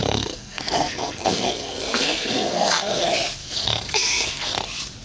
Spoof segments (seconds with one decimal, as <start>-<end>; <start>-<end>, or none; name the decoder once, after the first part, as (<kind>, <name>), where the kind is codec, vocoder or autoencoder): 0.0-3.0 (codec, SNAC); 3.4-4.6